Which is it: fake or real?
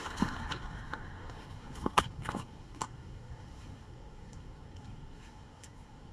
fake